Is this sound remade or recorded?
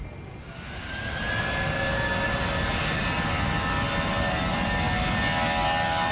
recorded